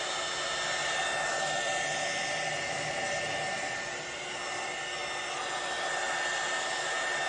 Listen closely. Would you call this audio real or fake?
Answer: real